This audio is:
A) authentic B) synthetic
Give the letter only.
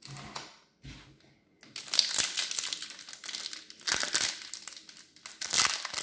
A